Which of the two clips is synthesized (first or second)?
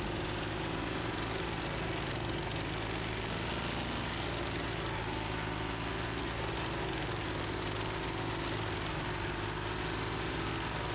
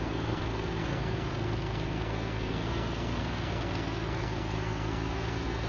second